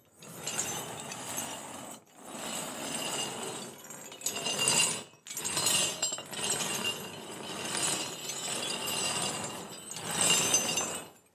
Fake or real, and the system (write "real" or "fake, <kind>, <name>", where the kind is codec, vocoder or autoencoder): real